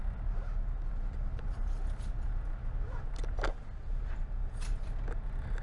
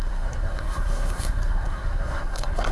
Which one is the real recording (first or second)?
first